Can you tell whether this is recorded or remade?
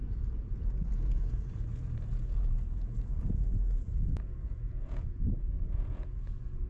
remade